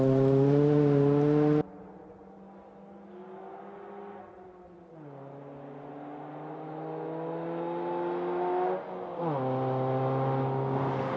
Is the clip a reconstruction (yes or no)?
no